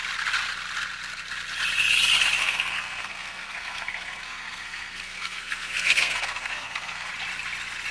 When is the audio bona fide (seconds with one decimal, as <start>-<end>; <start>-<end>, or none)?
0.0-2.4; 7.1-7.9